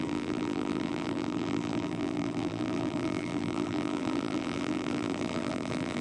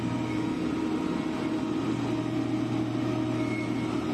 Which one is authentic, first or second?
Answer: second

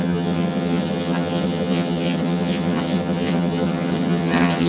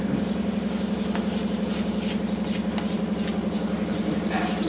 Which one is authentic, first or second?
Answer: second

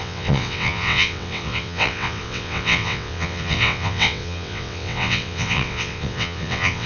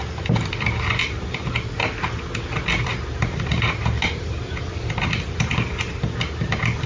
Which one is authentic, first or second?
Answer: second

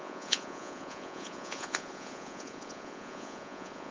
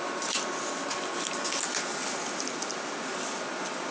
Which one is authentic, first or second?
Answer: second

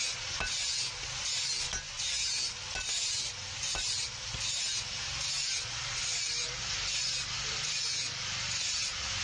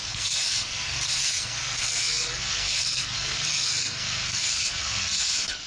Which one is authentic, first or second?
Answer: first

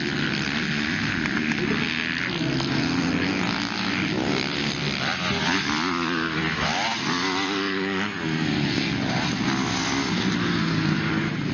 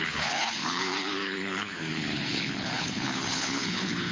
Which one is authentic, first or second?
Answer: first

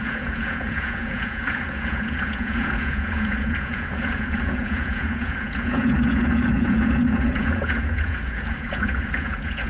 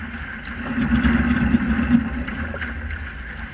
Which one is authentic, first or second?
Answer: second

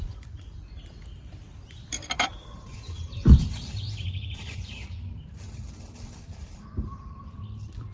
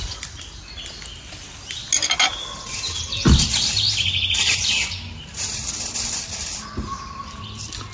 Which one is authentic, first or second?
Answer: second